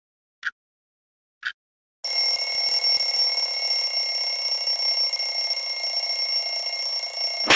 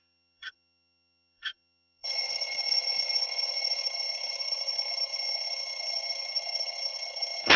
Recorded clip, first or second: first